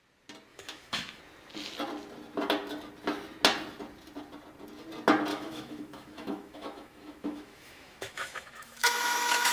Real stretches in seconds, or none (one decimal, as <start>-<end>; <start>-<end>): 0.0-0.5; 1.2-5.3